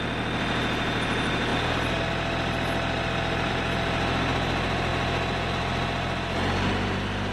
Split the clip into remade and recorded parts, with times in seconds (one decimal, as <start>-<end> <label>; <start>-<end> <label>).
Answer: 0.0-7.3 recorded